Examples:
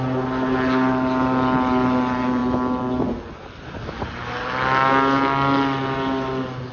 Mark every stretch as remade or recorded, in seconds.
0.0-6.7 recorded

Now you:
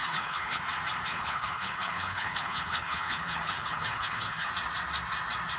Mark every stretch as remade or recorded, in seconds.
0.0-0.6 remade; 0.6-1.1 recorded; 1.1-4.5 remade; 4.5-5.6 recorded

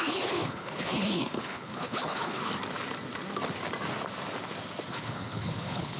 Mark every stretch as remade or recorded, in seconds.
0.0-2.4 remade; 2.4-4.9 recorded; 4.9-6.0 remade